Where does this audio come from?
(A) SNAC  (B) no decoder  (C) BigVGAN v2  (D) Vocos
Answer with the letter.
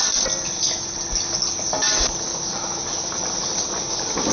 B